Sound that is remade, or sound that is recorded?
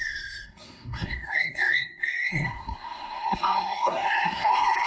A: remade